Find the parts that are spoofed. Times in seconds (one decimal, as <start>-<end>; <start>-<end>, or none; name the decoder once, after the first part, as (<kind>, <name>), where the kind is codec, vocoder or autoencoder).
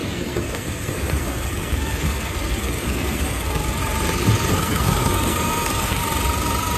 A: 0.0-3.6 (codec, SNAC); 4.5-6.0